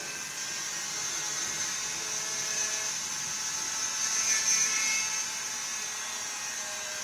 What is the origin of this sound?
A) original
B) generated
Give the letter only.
A